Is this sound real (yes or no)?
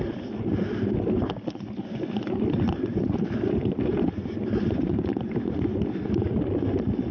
yes